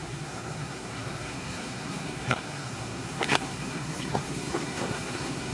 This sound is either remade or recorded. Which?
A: remade